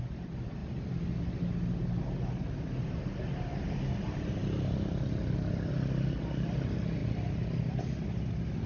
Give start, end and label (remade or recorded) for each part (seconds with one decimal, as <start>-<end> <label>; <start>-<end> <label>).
0.0-8.7 recorded